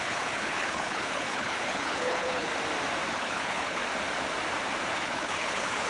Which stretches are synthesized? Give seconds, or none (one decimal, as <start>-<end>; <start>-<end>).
0.0-2.5; 3.1-3.8; 4.9-5.9